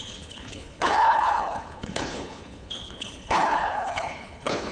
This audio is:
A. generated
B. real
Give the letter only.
A